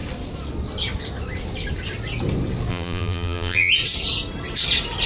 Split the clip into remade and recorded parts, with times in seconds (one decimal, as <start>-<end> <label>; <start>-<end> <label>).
0.0-2.7 recorded; 2.7-3.7 remade; 3.7-5.1 recorded